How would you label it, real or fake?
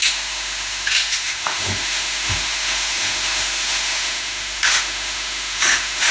fake